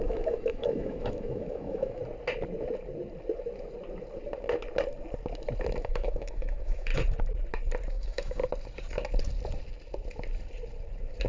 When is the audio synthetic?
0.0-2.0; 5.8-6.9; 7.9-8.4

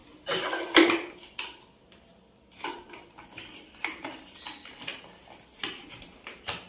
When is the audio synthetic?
none

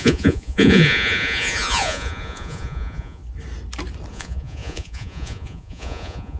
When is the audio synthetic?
0.0-3.2; 4.1-6.4